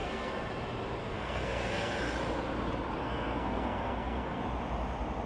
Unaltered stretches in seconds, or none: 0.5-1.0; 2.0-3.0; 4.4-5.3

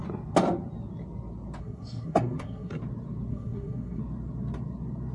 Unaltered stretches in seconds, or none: 0.0-1.6; 2.8-3.3; 4.0-5.1